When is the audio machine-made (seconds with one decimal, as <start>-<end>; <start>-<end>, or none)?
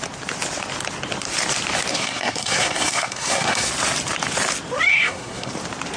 1.9-3.7; 4.9-5.5